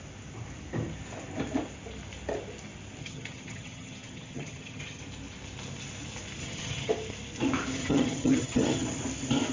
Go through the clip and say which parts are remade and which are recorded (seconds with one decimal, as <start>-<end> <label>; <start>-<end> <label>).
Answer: 0.0-3.0 recorded; 3.0-5.0 remade; 5.0-6.4 recorded; 6.4-6.9 remade; 6.9-7.8 recorded; 7.8-9.0 remade; 9.0-9.5 recorded